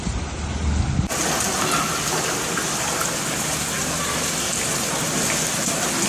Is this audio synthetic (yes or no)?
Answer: no